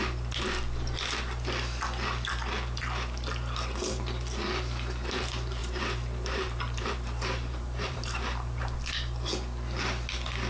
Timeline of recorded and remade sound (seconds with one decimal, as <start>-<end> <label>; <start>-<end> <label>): 0.0-5.6 recorded; 5.6-8.8 remade; 8.8-10.5 recorded